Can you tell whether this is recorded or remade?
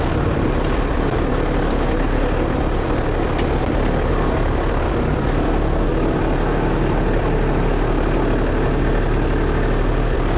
recorded